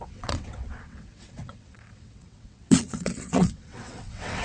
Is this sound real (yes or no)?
no